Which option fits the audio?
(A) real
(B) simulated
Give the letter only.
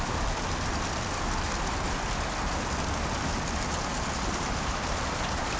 A